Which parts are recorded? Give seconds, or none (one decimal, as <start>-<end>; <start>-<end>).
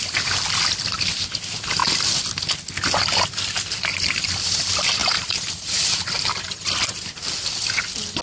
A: 0.0-5.0; 5.8-8.2